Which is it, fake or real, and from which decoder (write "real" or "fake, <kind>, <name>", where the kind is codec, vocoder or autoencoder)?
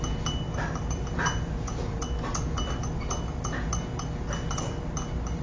real